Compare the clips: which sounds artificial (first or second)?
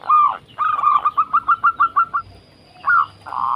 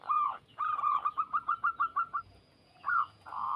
second